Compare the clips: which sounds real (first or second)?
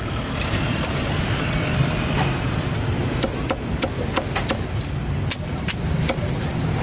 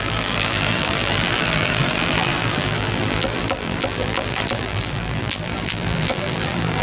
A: first